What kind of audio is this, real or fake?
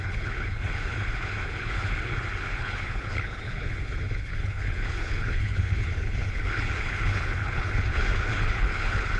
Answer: fake